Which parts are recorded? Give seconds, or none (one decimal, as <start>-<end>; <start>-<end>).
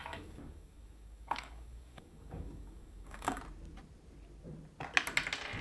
3.4-5.6